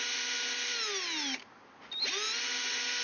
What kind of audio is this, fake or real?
real